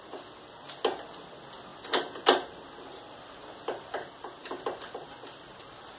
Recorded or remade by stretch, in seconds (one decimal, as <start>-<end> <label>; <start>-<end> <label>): 0.0-6.0 recorded